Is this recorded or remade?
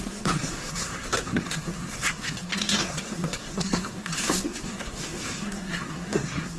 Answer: remade